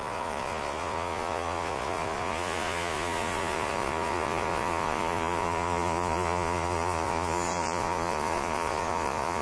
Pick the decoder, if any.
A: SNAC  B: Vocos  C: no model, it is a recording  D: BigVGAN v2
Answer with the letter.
B